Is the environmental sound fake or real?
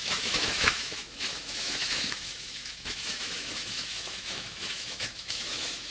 fake